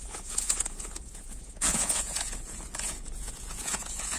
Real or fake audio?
fake